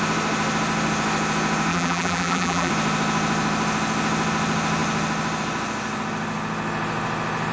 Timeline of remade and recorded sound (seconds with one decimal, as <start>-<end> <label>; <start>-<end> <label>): 0.0-1.7 recorded; 1.7-2.7 remade; 2.7-7.5 recorded